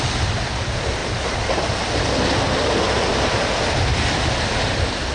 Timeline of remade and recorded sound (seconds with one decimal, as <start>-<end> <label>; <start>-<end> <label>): 0.0-5.1 recorded